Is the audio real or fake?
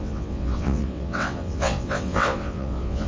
fake